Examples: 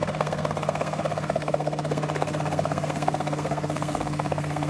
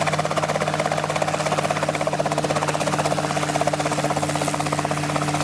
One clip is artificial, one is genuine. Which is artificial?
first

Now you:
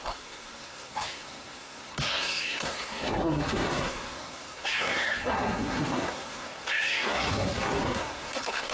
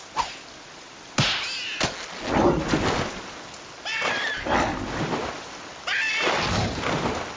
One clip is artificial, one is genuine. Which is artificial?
first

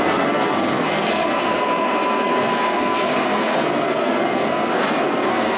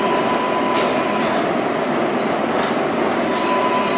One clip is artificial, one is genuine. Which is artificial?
first